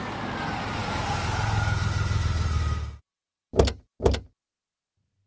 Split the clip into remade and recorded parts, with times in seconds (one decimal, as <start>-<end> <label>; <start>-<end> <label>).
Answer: 0.0-5.3 recorded